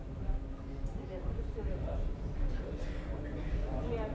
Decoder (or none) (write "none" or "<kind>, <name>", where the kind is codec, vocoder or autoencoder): none